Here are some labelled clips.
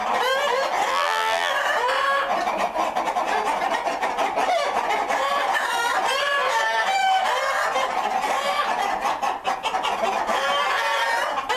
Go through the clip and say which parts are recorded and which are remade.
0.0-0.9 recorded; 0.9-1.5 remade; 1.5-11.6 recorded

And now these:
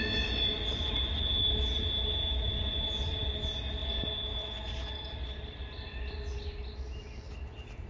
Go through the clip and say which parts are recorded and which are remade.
0.0-7.9 recorded

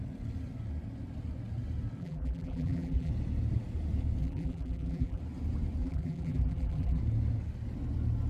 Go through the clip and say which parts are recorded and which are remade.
0.0-2.0 recorded; 2.0-3.1 remade; 3.1-4.2 recorded; 4.2-5.2 remade; 5.2-5.8 recorded; 5.8-7.0 remade; 7.0-8.3 recorded